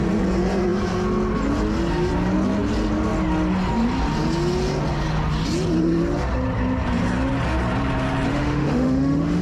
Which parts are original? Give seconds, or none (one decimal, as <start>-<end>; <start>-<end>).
0.0-8.3